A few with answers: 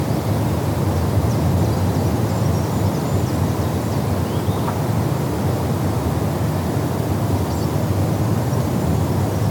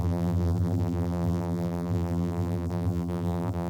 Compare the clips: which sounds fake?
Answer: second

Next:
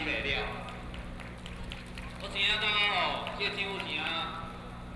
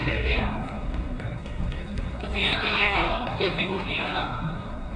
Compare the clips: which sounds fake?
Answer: second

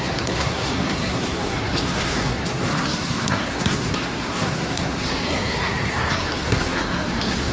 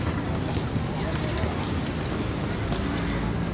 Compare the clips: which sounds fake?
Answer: first